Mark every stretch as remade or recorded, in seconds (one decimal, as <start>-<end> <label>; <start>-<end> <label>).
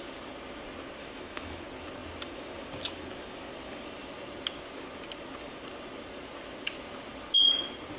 0.0-1.0 recorded; 1.0-1.6 remade; 1.6-8.0 recorded